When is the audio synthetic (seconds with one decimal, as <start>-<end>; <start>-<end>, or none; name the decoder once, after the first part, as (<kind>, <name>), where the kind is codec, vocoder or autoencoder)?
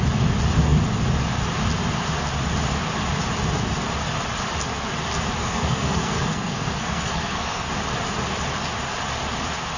5.4-7.7 (codec, SNAC)